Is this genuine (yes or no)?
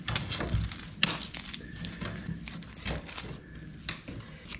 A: yes